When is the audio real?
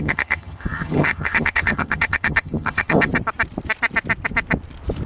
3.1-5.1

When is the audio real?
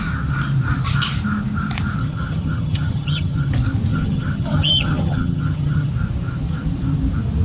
0.0-2.0; 3.5-3.9; 5.9-7.4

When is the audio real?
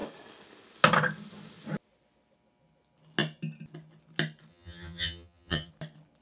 0.0-4.5; 5.7-6.2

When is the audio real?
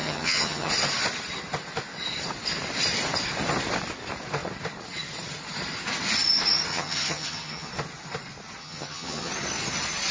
0.7-6.7; 7.7-8.6; 9.3-10.1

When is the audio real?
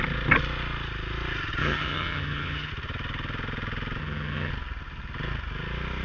0.0-1.6; 2.7-4.0; 4.5-6.0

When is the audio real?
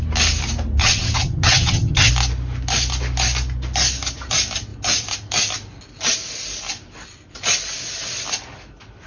0.0-0.8; 2.1-9.1